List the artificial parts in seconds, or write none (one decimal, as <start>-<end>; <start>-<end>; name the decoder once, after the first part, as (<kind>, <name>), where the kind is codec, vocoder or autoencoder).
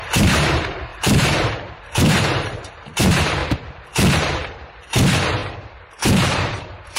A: 0.0-3.4 (vocoder, BigVGAN v2); 4.1-7.0